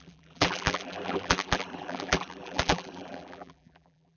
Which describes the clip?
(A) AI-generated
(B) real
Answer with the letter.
A